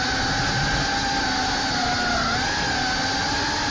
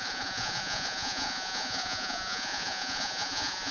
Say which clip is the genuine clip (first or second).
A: first